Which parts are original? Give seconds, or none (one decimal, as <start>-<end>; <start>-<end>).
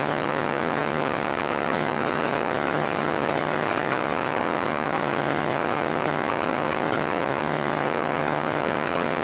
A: none